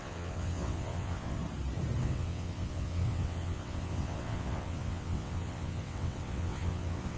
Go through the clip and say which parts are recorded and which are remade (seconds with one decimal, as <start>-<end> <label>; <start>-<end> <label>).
0.0-1.4 remade; 1.4-2.0 recorded; 2.0-7.2 remade